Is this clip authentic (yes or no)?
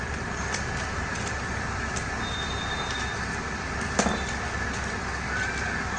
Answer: yes